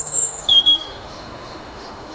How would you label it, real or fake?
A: fake